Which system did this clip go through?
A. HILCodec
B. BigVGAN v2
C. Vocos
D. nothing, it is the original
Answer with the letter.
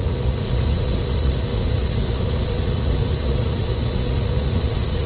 C